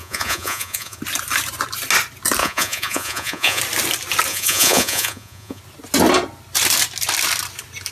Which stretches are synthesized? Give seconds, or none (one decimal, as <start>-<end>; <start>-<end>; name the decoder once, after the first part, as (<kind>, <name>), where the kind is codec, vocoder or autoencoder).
0.0-1.0 (vocoder, Vocos); 2.4-3.6; 4.3-5.6